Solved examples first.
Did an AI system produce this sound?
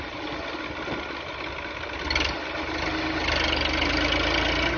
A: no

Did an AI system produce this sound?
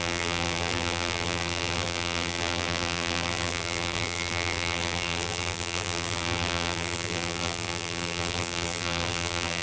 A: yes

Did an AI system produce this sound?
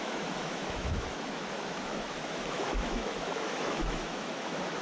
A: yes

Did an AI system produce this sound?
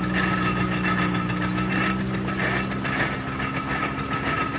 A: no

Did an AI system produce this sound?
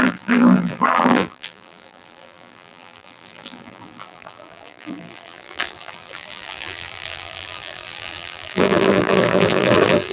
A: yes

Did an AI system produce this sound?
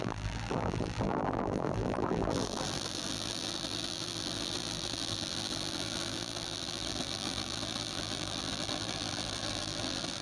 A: yes